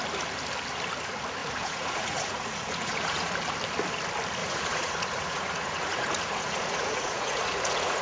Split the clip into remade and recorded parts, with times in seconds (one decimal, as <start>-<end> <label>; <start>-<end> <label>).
0.0-1.4 recorded; 1.4-3.3 remade; 3.3-4.4 recorded; 4.4-8.0 remade